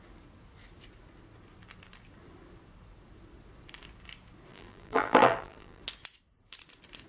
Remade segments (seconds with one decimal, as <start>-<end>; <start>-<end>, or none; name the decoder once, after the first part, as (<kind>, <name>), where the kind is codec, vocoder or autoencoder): 4.5-5.8 (vocoder, BigVGAN v2)